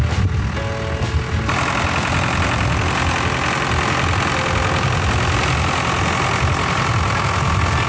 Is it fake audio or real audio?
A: real